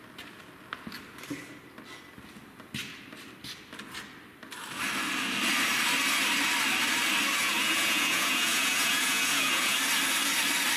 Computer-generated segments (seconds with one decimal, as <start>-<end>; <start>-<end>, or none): 7.4-9.8